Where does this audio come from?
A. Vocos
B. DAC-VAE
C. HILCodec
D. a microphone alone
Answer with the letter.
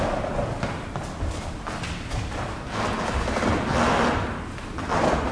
D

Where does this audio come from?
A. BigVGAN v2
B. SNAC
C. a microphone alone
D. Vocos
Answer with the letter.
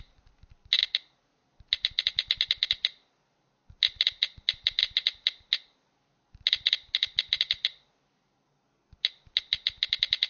C